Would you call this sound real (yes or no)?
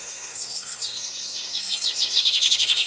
no